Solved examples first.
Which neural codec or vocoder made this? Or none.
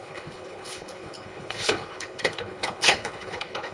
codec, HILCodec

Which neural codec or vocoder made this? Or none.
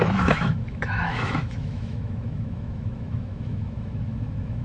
autoencoder, DAC-VAE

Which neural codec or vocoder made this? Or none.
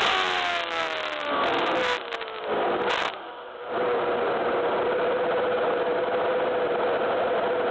none